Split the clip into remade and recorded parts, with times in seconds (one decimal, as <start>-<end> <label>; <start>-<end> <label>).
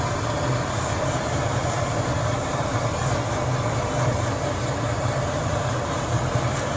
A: 0.0-3.0 remade; 3.0-4.1 recorded; 4.1-6.8 remade